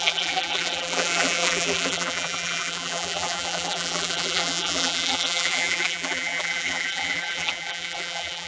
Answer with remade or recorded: remade